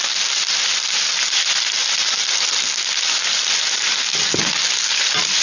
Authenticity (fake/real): real